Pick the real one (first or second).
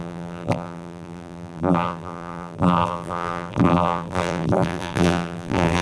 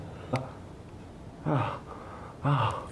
second